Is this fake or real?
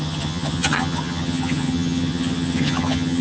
fake